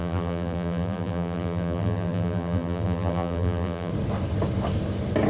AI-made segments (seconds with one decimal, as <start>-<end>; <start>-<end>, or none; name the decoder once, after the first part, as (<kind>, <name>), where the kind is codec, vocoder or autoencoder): 0.0-3.9 (vocoder, BigVGAN v2)